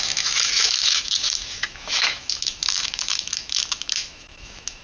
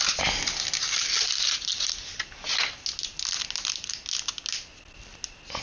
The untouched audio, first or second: second